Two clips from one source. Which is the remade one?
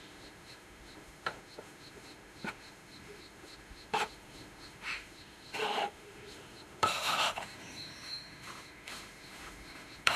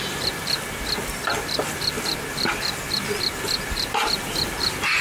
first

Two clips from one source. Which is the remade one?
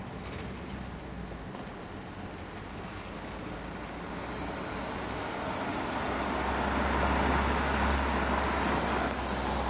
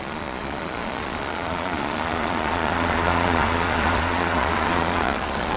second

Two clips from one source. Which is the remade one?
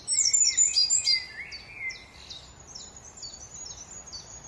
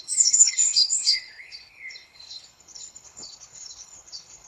second